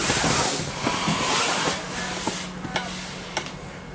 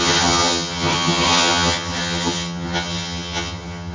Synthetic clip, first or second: second